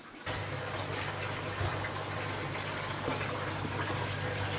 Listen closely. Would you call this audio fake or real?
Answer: real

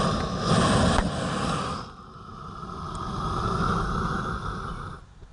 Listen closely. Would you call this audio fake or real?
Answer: real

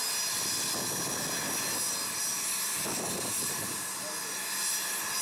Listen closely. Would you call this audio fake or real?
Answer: real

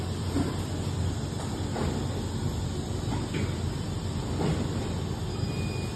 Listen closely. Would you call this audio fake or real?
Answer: real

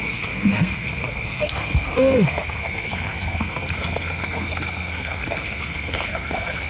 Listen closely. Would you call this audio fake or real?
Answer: fake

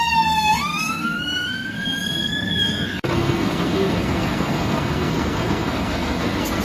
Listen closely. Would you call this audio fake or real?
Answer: fake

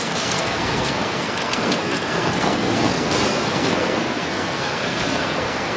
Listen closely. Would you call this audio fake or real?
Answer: fake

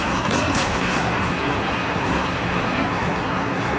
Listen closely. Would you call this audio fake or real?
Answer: fake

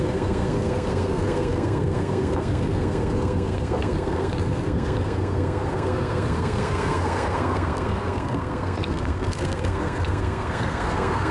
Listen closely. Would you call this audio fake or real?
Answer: fake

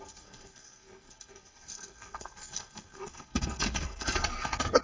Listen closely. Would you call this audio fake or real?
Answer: fake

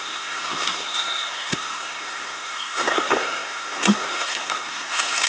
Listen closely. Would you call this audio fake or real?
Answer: fake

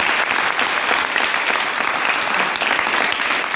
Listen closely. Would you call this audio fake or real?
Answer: real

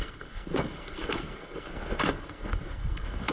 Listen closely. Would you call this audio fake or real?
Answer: fake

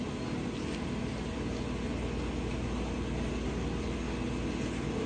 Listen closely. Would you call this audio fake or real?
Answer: real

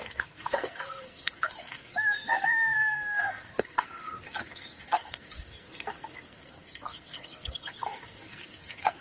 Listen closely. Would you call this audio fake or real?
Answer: fake